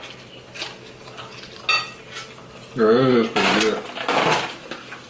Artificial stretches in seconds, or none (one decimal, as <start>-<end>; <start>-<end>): none

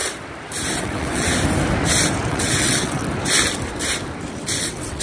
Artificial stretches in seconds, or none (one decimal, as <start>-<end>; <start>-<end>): 0.8-1.3; 2.3-3.0; 4.6-5.0

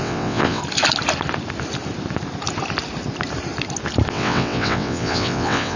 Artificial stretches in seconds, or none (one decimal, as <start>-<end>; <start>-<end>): 0.0-0.6; 4.1-5.8

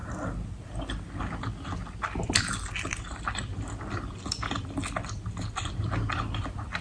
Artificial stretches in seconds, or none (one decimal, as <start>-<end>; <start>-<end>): none

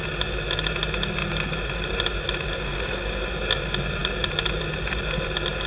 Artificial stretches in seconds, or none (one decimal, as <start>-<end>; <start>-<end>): none

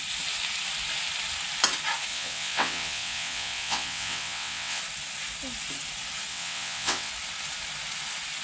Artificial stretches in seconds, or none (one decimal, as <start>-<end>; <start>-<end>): 2.1-4.8; 6.3-7.1